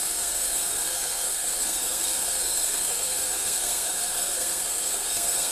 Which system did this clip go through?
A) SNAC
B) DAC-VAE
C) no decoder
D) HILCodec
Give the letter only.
A